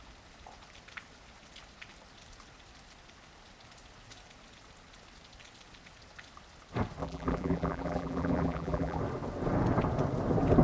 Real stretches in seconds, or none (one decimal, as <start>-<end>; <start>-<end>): 0.0-7.0; 9.0-10.6